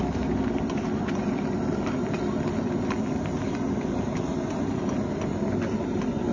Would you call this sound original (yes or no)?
yes